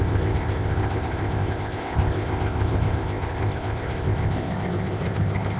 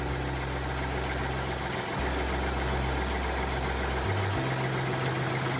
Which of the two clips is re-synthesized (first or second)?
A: first